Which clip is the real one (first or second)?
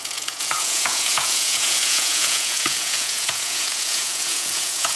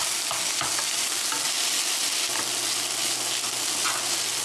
second